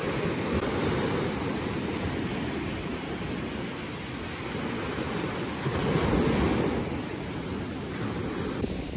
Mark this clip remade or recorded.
recorded